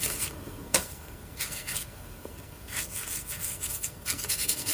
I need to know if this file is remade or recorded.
remade